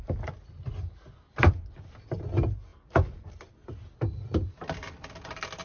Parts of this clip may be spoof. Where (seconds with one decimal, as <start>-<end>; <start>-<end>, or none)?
none